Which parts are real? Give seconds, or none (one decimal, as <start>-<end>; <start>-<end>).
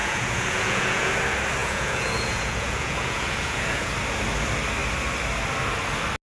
1.1-1.6; 3.9-6.2